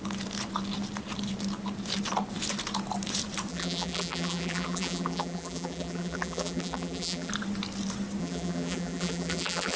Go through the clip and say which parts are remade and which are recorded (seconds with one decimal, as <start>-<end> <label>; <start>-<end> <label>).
0.0-3.5 recorded; 3.5-7.3 remade; 7.3-8.2 recorded; 8.2-9.8 remade